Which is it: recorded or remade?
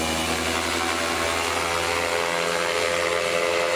recorded